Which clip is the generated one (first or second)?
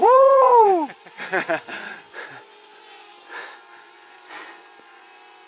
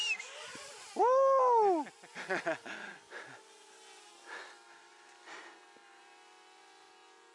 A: first